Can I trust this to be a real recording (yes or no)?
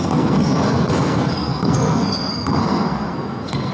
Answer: no